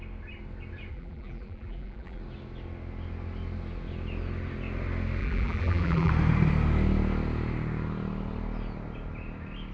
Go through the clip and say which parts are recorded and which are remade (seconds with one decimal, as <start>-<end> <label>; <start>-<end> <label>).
0.0-0.9 recorded; 0.9-2.2 remade; 2.2-5.2 recorded; 5.2-6.1 remade; 6.1-9.7 recorded